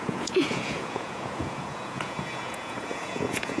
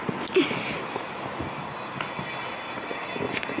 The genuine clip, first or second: second